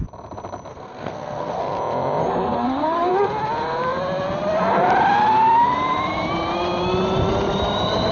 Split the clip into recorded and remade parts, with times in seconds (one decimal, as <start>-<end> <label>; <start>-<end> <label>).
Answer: 0.0-0.7 recorded; 0.7-1.6 remade; 1.6-2.2 recorded; 2.2-3.1 remade; 3.1-8.1 recorded